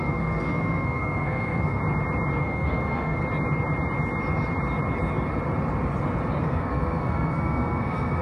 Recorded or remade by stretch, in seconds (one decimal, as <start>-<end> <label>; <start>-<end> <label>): 0.0-1.8 remade; 1.8-2.4 recorded; 2.4-3.2 remade; 3.2-6.4 recorded; 6.4-8.2 remade